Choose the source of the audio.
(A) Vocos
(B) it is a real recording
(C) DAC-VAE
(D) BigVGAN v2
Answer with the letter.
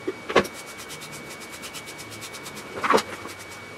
B